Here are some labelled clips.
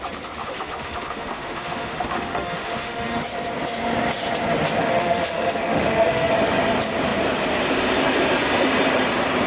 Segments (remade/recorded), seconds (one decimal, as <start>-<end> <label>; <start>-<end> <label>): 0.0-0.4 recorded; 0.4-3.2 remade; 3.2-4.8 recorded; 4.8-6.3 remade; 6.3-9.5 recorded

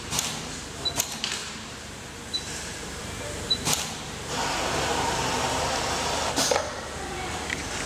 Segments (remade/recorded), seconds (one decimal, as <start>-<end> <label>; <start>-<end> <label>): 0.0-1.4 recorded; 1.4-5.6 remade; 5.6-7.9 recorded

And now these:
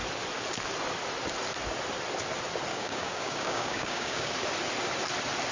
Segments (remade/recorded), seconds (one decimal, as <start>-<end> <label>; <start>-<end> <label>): 0.0-2.7 recorded; 2.7-4.3 remade; 4.3-5.5 recorded

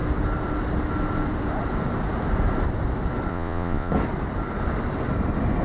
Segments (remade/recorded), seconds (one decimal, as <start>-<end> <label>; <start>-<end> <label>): 0.0-3.3 recorded; 3.3-3.9 remade; 3.9-5.6 recorded

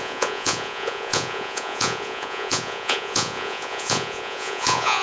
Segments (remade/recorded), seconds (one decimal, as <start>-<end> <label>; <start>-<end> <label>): 0.0-5.0 remade

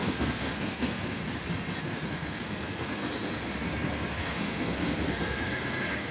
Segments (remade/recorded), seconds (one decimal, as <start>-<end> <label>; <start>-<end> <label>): 0.0-1.2 remade; 1.2-1.8 recorded; 1.8-3.0 remade; 3.0-4.1 recorded; 4.1-6.1 remade

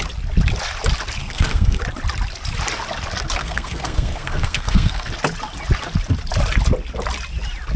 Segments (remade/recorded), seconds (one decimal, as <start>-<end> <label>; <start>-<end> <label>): 0.0-1.2 recorded; 1.2-1.8 remade; 1.8-3.4 recorded; 3.4-5.1 remade; 5.1-7.8 recorded